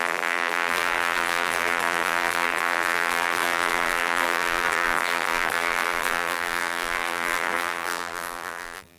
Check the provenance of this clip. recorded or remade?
remade